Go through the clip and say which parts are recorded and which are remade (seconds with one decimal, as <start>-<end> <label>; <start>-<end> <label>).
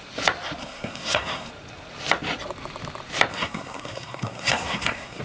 0.0-0.6 recorded; 0.6-1.5 remade; 1.5-3.3 recorded; 3.3-5.2 remade